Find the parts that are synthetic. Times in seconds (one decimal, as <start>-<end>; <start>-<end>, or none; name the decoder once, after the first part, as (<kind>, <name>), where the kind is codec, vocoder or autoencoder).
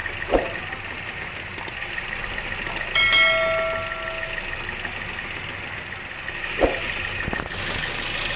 none